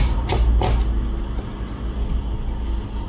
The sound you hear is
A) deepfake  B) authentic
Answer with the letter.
B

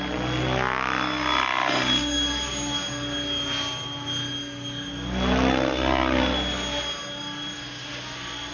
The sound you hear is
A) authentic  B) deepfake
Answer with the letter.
A